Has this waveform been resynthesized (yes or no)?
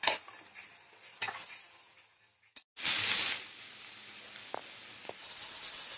no